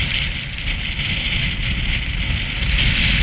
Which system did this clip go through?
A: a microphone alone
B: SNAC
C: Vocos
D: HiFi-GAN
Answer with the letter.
A